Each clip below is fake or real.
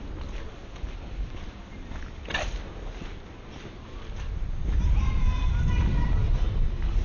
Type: real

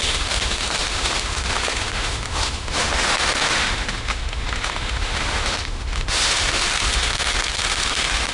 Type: fake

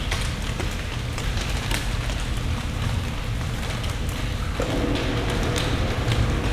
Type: real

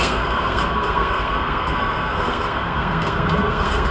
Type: fake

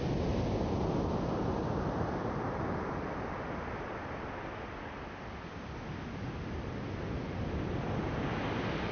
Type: real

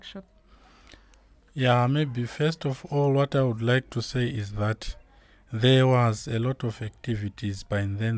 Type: real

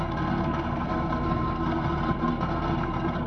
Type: fake